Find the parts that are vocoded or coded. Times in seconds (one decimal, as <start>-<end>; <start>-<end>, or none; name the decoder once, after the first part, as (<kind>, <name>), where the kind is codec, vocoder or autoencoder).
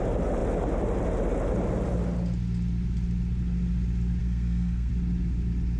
4.2-4.9 (codec, SNAC)